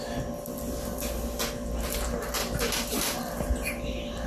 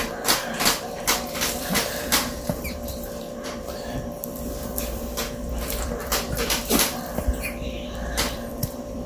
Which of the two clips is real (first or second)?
first